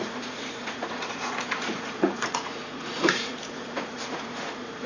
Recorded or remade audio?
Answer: remade